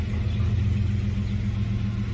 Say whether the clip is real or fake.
real